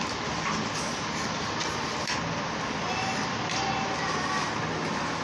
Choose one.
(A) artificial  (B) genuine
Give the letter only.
B